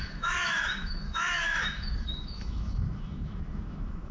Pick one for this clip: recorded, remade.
remade